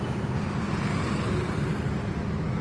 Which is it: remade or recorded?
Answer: recorded